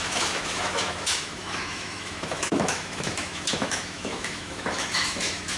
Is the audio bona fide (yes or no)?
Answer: no